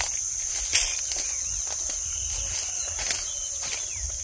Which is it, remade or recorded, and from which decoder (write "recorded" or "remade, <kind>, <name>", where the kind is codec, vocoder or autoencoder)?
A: recorded